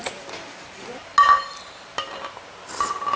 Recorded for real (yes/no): yes